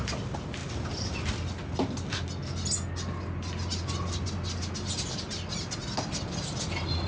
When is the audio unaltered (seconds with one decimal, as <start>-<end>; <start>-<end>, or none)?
0.0-7.1

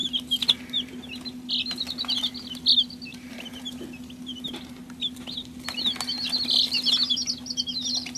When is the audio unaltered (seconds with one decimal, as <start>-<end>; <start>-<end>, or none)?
0.0-3.1; 3.8-8.2